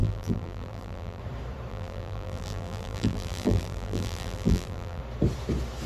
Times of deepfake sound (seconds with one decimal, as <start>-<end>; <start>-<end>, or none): 0.0-1.2; 1.7-5.0